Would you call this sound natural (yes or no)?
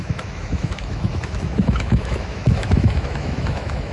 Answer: no